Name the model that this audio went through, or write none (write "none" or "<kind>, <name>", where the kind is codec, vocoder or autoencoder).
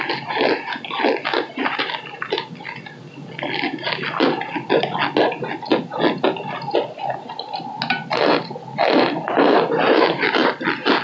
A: none